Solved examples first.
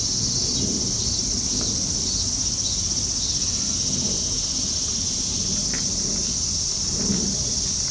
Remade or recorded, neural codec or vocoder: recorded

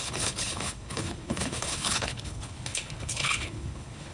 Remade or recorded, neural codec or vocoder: remade, codec, HILCodec